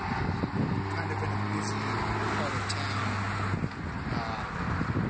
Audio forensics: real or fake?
real